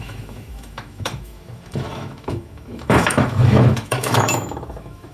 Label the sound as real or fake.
fake